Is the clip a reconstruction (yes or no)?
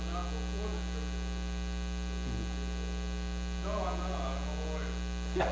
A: no